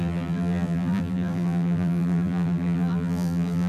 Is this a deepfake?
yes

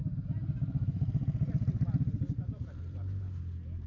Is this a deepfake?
no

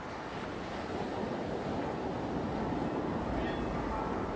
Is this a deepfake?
no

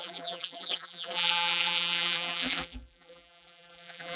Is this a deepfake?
yes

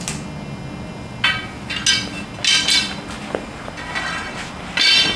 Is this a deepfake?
no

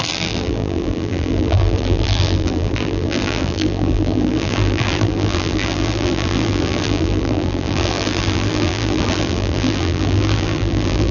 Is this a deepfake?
yes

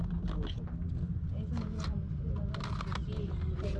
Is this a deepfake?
no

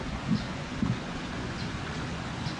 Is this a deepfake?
yes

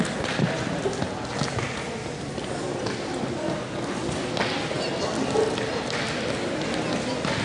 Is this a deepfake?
no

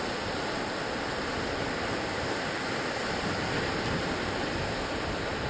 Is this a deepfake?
no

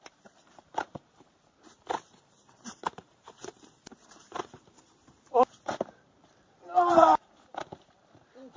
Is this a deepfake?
yes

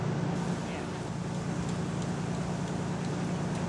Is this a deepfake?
no